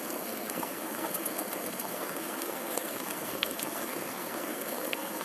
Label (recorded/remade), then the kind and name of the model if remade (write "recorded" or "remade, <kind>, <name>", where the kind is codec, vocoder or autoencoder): remade, codec, SNAC